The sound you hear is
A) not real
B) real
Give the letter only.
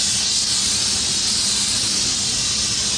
B